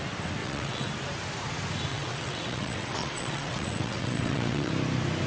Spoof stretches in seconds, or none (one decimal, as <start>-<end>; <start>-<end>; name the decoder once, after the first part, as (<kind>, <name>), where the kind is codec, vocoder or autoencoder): 0.4-0.9 (vocoder, WaveNeXt); 1.9-4.7